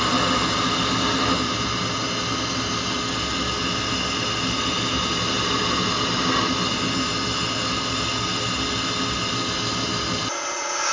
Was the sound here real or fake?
real